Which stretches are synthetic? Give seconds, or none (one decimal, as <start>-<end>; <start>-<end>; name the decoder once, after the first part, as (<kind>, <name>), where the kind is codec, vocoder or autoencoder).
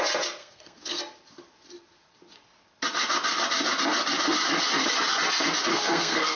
0.4-1.0 (codec, SNAC); 5.7-6.4